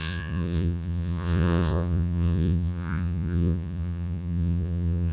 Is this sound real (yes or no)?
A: no